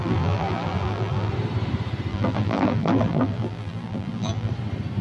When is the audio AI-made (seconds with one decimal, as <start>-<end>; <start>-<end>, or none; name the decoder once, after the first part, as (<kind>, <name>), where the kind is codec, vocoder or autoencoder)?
0.0-1.3 (vocoder, BigVGAN v2); 2.1-4.5